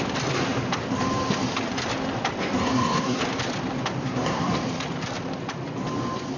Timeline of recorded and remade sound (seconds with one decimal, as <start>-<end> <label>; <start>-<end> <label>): 0.0-2.6 recorded; 2.6-3.2 remade; 3.2-4.0 recorded; 4.0-4.5 remade; 4.5-6.4 recorded